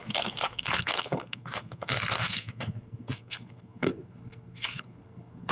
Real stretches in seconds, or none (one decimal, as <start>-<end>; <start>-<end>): none